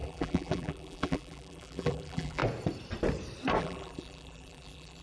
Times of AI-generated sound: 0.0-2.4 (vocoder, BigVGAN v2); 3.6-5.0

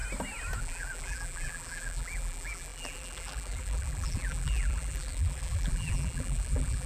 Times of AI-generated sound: 0.6-6.9 (vocoder, BigVGAN v2)

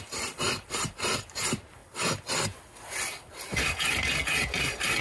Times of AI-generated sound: 0.0-1.8 (vocoder, BigVGAN v2)